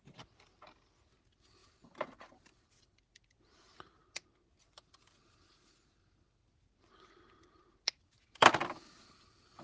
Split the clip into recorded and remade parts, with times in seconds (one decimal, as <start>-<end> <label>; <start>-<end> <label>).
0.0-1.6 recorded; 1.6-3.0 remade; 3.0-9.6 recorded